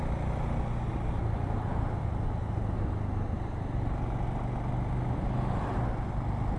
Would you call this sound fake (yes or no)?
no